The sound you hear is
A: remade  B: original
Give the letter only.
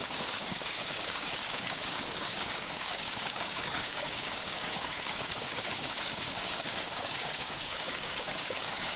A